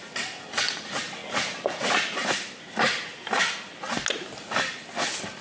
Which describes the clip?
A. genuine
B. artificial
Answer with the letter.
A